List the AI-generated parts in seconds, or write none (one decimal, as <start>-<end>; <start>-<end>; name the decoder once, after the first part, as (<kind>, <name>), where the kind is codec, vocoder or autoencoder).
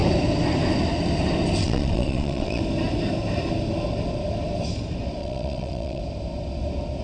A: 1.6-2.6 (vocoder, WaveNeXt); 5.2-6.0